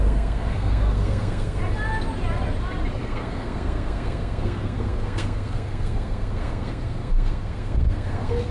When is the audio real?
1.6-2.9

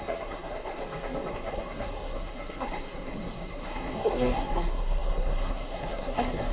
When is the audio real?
0.8-1.3